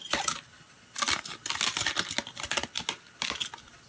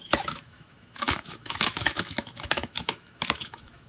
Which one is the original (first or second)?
first